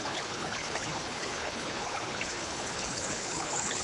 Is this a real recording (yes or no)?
no